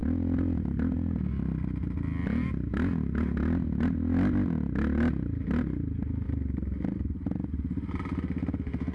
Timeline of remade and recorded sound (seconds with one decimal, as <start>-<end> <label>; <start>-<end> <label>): 0.0-8.9 recorded